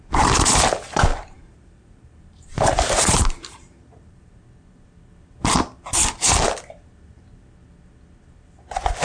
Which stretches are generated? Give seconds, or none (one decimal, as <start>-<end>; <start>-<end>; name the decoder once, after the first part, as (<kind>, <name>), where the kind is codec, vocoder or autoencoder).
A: 1.1-4.4 (vocoder, BigVGAN v2)